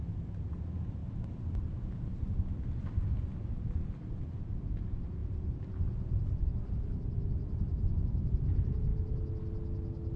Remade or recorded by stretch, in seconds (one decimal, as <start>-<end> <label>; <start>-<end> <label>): 0.0-10.2 recorded

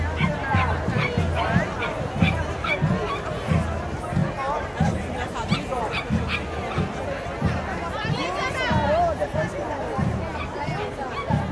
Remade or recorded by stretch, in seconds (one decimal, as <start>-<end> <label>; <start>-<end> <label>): 0.0-11.5 recorded